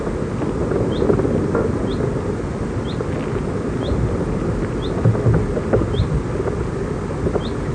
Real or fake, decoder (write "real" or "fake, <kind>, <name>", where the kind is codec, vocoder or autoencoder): real